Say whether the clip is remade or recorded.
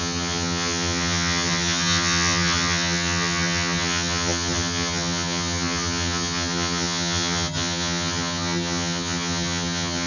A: remade